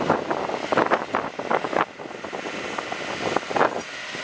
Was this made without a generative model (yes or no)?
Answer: yes